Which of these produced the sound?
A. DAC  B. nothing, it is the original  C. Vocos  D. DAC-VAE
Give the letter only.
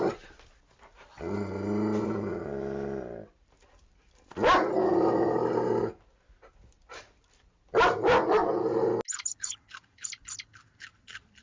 B